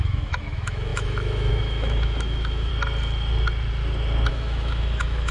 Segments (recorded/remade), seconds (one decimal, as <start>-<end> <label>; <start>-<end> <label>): 0.0-2.7 remade; 2.7-4.3 recorded; 4.3-5.3 remade